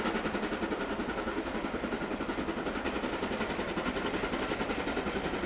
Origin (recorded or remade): recorded